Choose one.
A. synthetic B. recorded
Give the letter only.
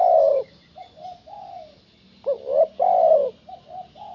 B